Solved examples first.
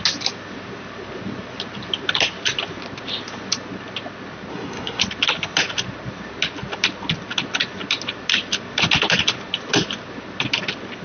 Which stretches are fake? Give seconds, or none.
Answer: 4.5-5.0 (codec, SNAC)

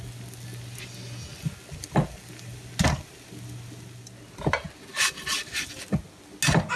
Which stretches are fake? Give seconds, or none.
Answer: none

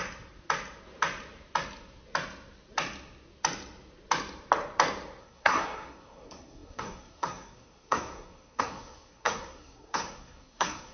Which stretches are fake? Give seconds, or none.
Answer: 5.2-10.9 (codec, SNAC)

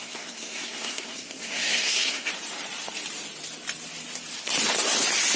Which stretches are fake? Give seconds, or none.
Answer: 0.0-2.3 (codec, SNAC)

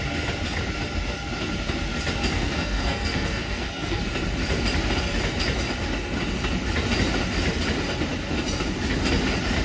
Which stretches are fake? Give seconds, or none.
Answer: 2.3-4.0 (codec, SNAC)

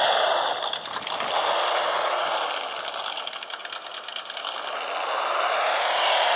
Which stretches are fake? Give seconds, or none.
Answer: none